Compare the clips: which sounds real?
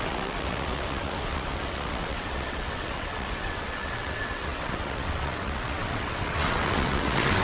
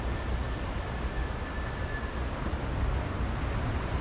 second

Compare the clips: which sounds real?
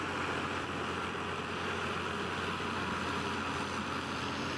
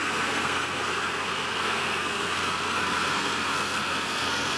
first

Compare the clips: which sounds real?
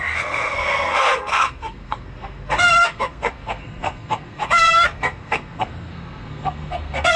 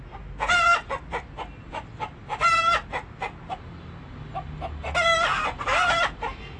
second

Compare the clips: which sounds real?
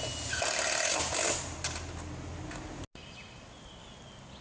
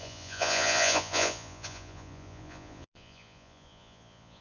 first